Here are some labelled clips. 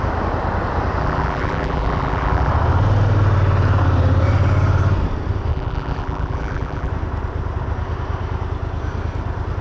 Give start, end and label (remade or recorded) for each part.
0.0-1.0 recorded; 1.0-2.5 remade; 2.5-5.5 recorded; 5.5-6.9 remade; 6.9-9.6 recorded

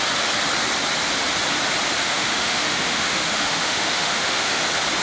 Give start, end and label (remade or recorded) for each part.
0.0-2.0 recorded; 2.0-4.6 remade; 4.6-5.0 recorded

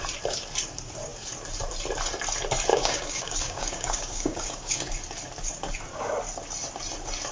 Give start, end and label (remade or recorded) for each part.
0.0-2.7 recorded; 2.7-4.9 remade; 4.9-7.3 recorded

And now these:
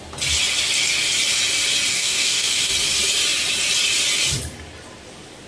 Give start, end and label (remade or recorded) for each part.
0.0-1.9 recorded; 1.9-2.7 remade; 2.7-5.5 recorded

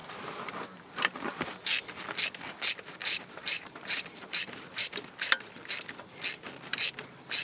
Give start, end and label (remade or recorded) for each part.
0.0-1.5 remade; 1.5-3.0 recorded; 3.0-5.1 remade; 5.1-7.4 recorded